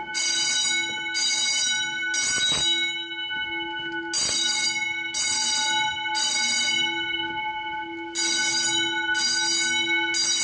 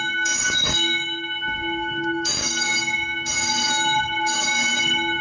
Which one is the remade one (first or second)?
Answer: second